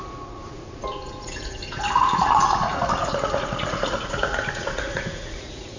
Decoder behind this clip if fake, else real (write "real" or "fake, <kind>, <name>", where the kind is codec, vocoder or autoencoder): fake, vocoder, Vocos